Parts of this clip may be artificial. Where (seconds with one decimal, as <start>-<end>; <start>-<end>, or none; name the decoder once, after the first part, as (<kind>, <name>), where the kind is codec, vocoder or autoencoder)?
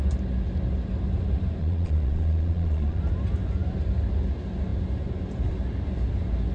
1.6-3.0 (vocoder, Vocos)